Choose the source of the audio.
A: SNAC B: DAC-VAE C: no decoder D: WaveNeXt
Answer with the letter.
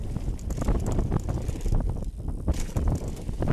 C